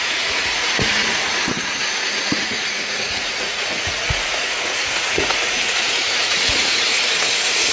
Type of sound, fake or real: fake